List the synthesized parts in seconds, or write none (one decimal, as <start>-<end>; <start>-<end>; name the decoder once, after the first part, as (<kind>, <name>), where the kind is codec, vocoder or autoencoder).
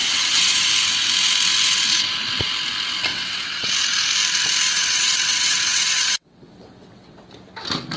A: 0.0-0.7 (vocoder, WaveNeXt); 3.1-3.7; 4.7-7.3